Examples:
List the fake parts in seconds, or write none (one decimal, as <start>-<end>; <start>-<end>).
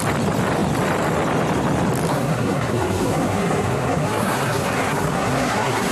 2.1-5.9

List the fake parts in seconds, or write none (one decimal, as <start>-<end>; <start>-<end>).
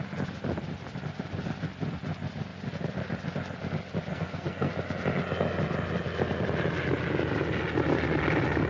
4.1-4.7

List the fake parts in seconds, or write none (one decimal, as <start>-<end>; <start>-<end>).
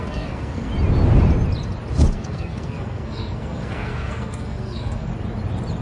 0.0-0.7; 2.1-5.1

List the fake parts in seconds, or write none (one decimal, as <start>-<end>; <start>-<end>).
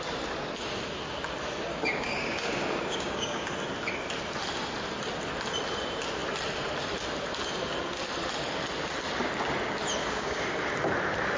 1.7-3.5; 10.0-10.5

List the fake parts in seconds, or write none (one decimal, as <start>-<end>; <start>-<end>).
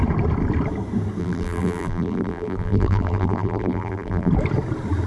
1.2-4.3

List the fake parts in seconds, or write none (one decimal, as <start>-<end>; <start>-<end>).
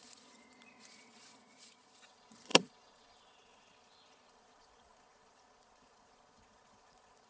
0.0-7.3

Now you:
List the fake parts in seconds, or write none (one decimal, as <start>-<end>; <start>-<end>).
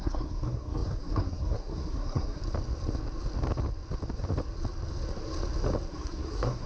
0.0-2.4; 5.9-6.7